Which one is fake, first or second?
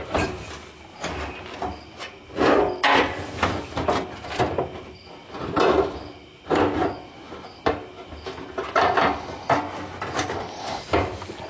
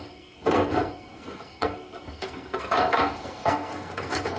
second